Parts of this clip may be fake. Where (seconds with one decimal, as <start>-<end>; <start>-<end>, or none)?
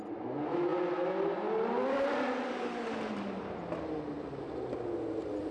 none